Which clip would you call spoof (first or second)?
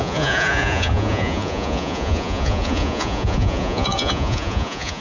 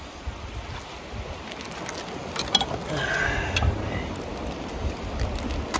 first